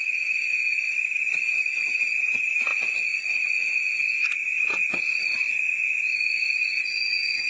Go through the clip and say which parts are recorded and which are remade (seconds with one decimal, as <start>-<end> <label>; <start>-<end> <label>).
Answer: 0.0-2.7 remade; 2.7-7.5 recorded